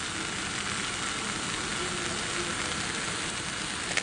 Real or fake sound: real